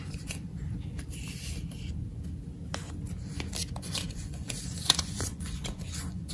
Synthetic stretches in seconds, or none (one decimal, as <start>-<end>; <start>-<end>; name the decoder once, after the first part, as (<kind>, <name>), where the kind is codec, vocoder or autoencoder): 0.0-0.5 (vocoder, Vocos); 3.8-6.3